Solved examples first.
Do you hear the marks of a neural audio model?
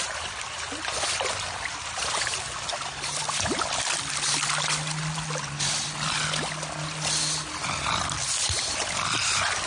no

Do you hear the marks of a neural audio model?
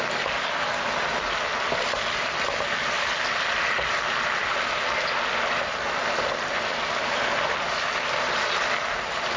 no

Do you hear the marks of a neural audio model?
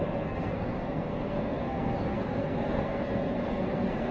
yes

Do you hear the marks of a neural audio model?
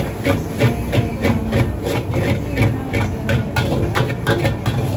no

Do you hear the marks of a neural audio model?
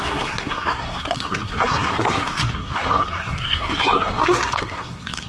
yes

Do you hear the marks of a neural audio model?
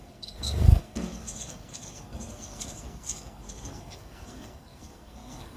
yes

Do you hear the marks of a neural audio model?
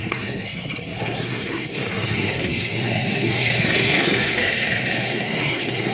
yes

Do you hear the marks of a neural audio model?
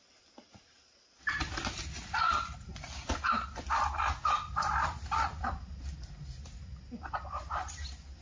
no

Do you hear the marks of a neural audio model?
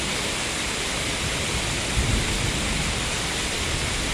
no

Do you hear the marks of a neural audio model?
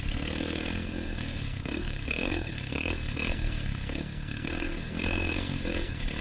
yes